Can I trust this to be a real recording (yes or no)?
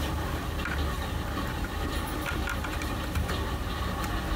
yes